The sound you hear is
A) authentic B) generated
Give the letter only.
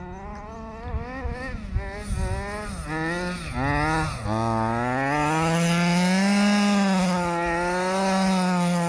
A